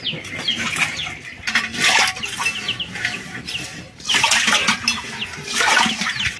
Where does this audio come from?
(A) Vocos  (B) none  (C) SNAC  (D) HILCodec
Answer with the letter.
B